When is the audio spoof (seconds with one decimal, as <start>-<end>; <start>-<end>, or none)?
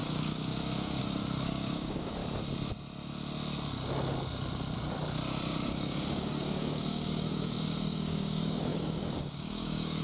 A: 0.0-2.2; 5.6-10.0